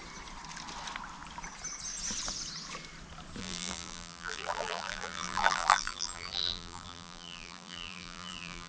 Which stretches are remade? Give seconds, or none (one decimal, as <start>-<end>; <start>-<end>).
3.4-8.7